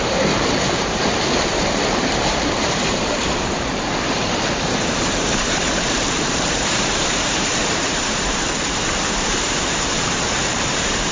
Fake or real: fake